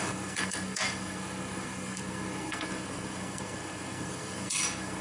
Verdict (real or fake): fake